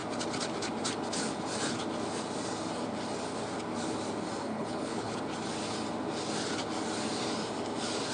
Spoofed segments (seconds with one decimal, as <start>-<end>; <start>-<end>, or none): 4.4-5.2